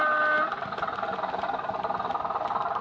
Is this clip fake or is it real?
real